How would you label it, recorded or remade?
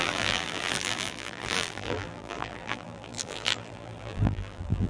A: remade